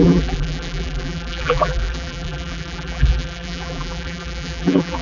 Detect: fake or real fake